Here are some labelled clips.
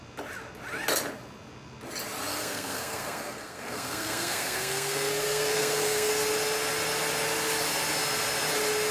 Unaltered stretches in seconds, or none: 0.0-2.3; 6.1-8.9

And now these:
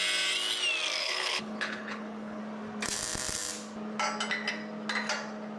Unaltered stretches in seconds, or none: 0.0-1.0; 2.4-5.6